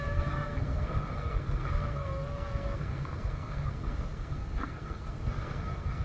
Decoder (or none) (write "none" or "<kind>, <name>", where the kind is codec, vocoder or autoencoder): codec, SNAC